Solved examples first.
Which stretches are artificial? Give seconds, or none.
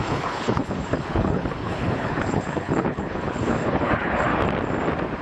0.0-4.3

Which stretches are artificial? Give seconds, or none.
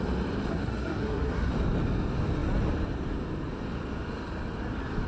0.5-1.5